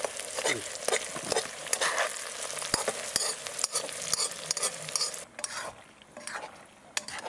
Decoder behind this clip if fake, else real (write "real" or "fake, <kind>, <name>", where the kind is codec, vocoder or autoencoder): real